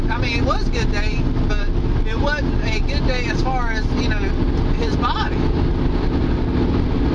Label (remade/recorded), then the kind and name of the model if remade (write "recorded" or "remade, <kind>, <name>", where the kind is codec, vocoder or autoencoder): recorded